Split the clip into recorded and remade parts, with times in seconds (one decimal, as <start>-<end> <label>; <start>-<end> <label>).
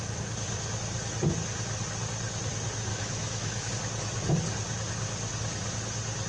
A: 0.0-2.9 recorded; 2.9-3.7 remade; 3.7-6.3 recorded